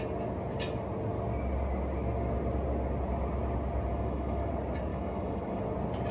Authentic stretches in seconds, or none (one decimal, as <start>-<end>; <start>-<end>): 0.0-3.9; 4.5-4.9; 5.6-6.1